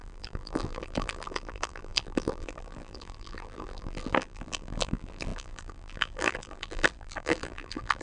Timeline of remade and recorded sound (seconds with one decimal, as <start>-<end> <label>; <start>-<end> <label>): 0.0-8.0 remade